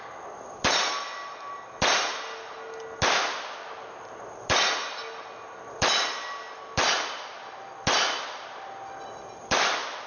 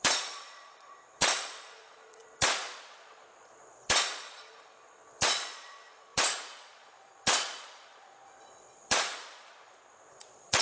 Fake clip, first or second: second